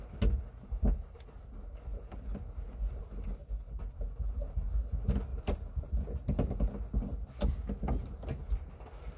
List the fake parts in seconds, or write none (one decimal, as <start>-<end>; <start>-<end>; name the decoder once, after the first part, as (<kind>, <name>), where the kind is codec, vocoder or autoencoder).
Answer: 5.3-6.5 (vocoder, BigVGAN v2)

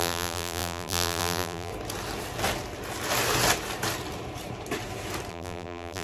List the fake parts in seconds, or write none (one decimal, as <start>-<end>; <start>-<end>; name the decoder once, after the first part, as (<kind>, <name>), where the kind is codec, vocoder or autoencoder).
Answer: 0.0-1.7 (vocoder, BigVGAN v2); 5.3-6.0

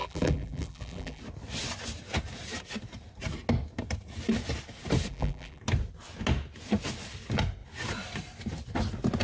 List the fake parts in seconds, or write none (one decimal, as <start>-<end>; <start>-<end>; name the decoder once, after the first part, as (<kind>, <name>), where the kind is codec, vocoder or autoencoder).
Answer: 0.0-1.2 (vocoder, BigVGAN v2); 5.1-5.6

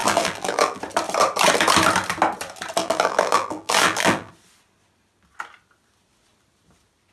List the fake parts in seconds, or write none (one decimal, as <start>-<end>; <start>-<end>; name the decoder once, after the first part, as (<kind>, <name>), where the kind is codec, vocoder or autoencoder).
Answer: 0.0-0.8 (vocoder, BigVGAN v2); 2.8-4.3

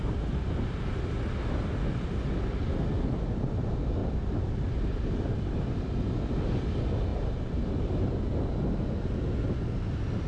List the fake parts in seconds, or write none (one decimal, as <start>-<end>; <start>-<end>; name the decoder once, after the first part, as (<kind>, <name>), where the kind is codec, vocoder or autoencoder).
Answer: 4.0-5.3 (vocoder, BigVGAN v2); 7.1-8.1

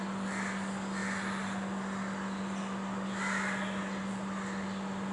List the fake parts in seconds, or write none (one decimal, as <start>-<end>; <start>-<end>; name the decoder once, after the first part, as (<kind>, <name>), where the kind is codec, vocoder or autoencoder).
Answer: none